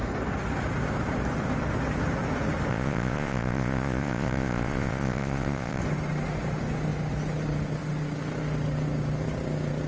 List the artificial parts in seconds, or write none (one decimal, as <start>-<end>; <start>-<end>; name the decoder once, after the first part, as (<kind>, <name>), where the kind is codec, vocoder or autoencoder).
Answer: 2.7-5.8 (vocoder, Vocos)